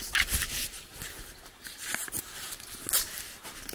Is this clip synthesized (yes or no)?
no